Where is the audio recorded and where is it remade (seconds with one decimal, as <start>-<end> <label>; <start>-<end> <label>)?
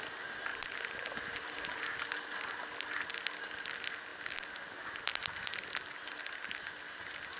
0.0-0.5 recorded; 0.5-1.8 remade; 1.8-7.4 recorded